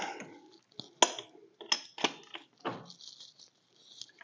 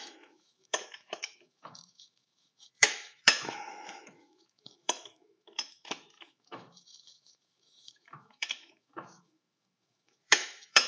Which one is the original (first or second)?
first